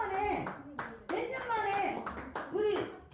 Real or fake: real